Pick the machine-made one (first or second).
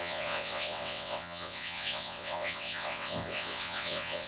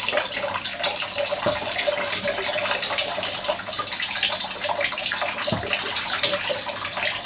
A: first